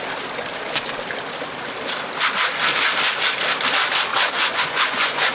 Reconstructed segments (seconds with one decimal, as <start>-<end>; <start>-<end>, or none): 4.1-5.3